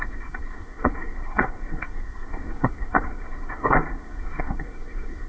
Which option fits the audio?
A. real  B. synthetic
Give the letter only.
B